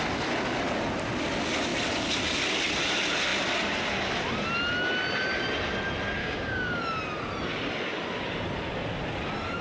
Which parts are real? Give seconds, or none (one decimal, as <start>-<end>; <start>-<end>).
0.0-6.2; 6.8-9.6